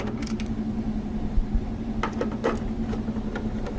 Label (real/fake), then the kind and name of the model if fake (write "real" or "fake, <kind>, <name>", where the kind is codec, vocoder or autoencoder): real